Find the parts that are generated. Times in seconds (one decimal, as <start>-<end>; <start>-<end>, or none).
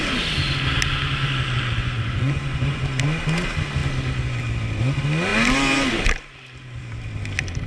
1.8-2.8